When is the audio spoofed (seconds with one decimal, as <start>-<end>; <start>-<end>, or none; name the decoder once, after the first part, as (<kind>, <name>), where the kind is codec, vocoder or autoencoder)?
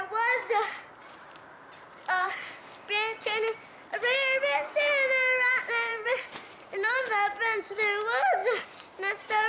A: 1.0-2.3 (vocoder, BigVGAN v2); 5.9-7.0